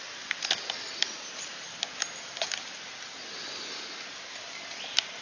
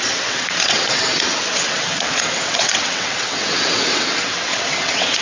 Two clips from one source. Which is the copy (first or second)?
second